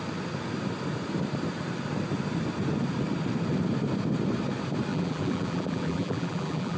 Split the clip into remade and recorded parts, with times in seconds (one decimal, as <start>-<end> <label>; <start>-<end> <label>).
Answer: 0.0-4.9 recorded; 4.9-6.8 remade